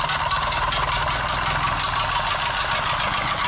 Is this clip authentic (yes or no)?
yes